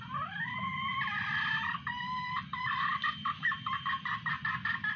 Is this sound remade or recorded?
recorded